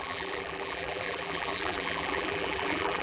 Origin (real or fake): fake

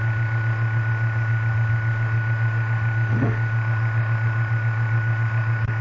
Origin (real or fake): fake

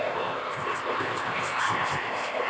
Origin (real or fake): fake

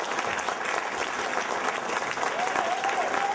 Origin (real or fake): real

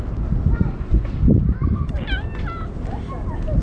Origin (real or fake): real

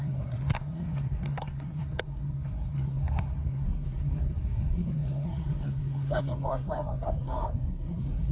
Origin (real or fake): fake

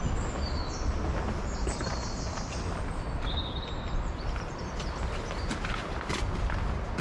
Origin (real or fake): real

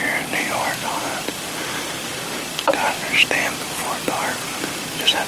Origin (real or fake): real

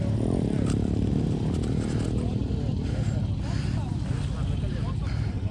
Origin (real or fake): real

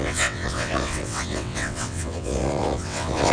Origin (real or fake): fake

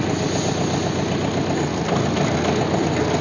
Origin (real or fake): real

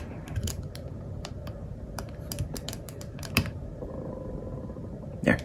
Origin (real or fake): fake